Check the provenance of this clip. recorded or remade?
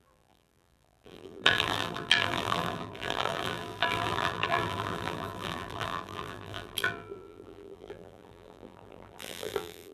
remade